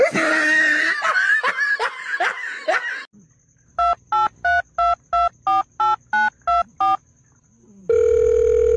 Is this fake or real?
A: real